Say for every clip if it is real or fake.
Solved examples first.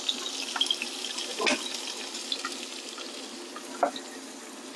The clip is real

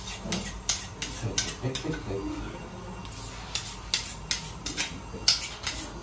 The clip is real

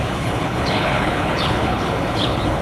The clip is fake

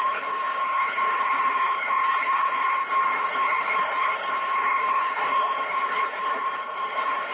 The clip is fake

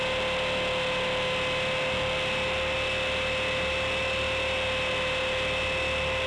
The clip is real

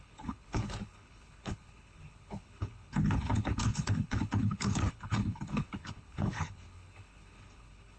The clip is fake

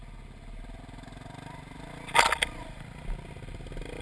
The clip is real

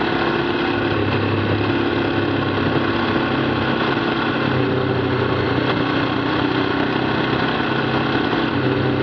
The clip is real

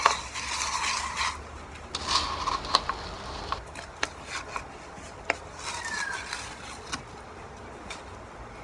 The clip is real